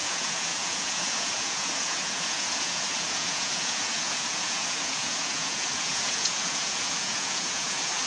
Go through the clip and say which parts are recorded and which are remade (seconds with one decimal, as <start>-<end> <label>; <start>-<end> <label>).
0.0-8.1 remade